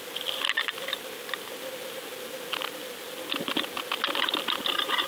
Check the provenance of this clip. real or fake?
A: real